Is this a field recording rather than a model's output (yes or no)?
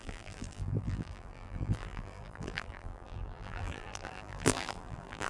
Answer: no